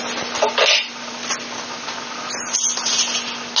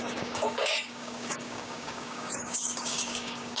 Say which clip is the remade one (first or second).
second